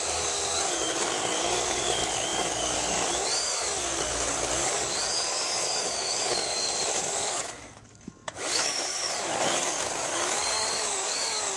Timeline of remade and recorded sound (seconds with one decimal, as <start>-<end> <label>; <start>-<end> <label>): 0.0-11.6 remade